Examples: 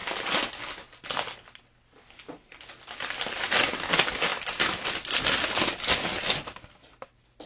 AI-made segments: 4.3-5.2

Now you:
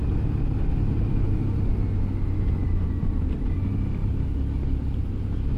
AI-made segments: none

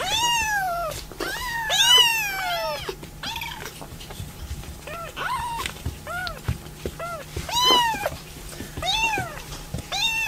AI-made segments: 0.0-2.1; 3.3-6.2; 8.0-10.3

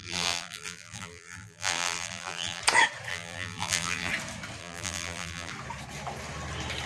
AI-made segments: 0.0-2.6; 3.1-4.1; 4.6-5.5

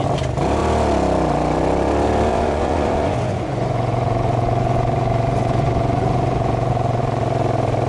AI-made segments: 2.3-7.0

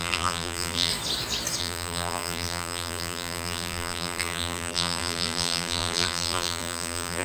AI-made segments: 0.0-0.9; 1.6-7.2

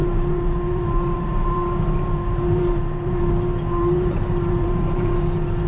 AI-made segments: 0.0-3.2; 3.8-5.2